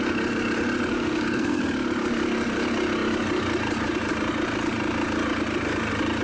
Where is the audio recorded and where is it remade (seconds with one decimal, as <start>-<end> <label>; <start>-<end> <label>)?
0.0-0.9 recorded; 0.9-1.6 remade; 1.6-6.2 recorded